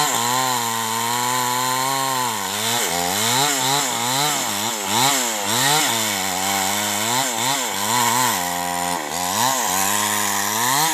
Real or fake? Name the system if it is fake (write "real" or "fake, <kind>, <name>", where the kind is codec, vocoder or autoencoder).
real